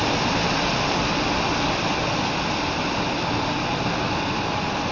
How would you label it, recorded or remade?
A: recorded